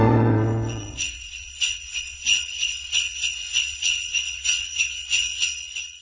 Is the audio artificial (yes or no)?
yes